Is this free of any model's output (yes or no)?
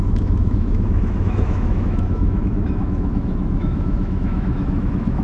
no